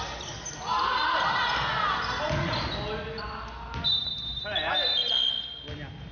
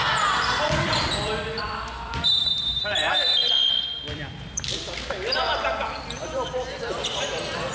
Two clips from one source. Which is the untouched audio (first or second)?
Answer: first